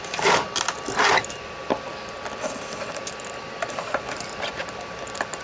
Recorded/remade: recorded